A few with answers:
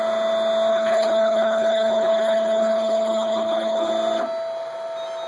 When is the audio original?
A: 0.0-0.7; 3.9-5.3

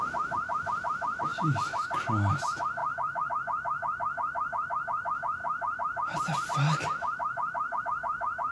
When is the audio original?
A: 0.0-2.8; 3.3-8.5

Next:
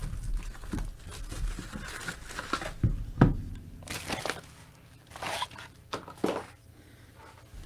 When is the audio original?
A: 0.0-7.7